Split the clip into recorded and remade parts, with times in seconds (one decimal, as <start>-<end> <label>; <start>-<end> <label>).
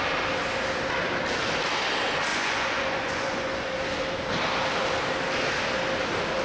0.0-2.3 recorded; 2.3-3.7 remade; 3.7-6.4 recorded